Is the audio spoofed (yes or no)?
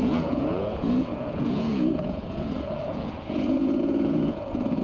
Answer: yes